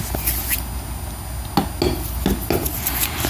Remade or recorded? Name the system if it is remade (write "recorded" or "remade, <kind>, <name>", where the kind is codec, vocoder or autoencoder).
recorded